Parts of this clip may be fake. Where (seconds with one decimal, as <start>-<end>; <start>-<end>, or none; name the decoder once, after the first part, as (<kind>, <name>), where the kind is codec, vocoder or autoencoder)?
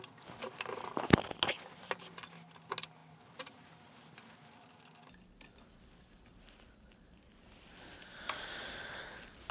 none